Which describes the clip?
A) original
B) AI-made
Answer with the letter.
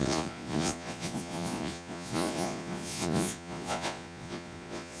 B